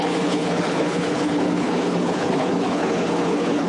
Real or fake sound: fake